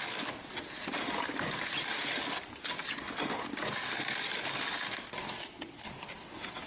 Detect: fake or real real